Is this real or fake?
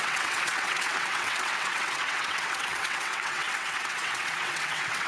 fake